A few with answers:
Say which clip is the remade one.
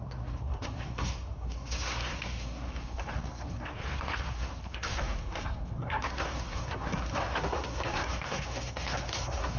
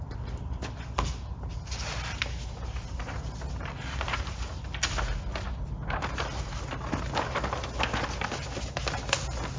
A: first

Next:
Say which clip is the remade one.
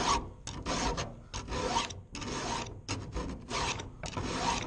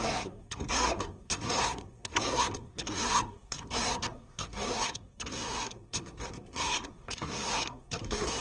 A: second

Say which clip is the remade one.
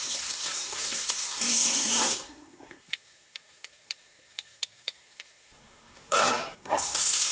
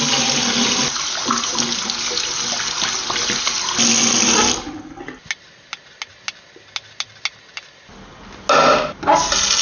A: first